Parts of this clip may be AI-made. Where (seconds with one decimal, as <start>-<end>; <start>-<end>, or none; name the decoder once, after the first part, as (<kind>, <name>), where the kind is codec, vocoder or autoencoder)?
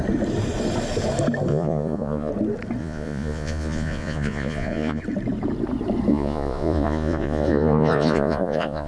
1.5-2.3 (vocoder, Vocos); 2.8-5.0; 6.1-8.9